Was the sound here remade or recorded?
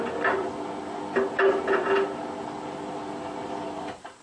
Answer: recorded